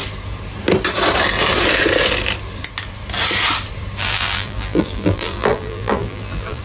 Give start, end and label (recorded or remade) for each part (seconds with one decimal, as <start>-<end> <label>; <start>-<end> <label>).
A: 0.0-4.0 recorded; 4.0-6.6 remade